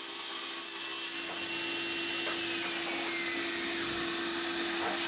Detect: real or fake real